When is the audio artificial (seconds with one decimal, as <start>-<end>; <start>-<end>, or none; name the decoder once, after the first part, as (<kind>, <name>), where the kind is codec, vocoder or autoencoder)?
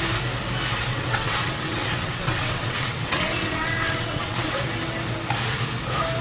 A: 0.9-4.6 (vocoder, WaveNeXt)